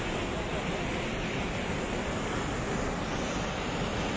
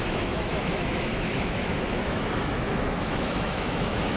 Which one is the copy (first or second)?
second